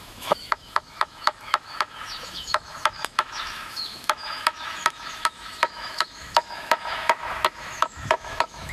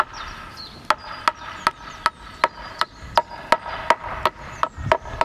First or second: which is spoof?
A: first